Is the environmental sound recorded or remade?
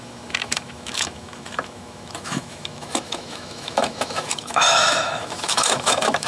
remade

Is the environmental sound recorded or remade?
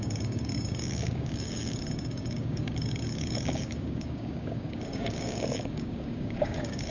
remade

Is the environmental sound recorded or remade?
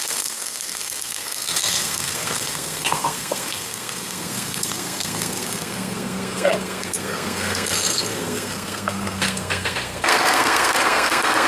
remade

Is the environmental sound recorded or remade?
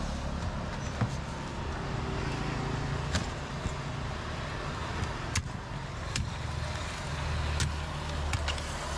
recorded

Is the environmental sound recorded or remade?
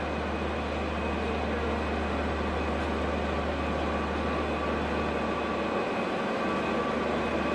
recorded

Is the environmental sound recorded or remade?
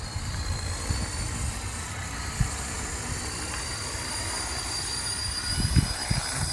recorded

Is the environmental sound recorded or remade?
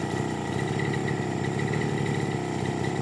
recorded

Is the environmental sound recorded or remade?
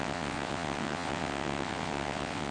remade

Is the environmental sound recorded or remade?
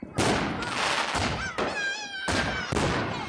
recorded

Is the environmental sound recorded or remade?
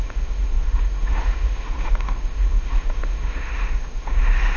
remade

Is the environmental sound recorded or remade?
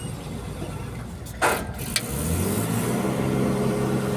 recorded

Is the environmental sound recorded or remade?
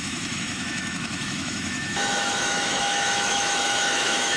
remade